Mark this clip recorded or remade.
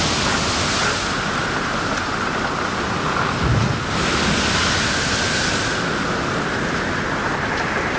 recorded